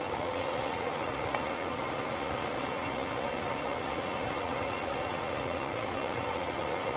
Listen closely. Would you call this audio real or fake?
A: fake